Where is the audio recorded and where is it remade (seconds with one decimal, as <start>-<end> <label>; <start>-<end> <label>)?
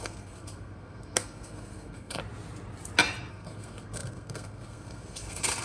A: 0.0-2.2 remade; 2.2-3.3 recorded; 3.3-5.6 remade